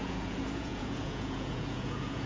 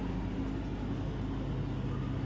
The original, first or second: second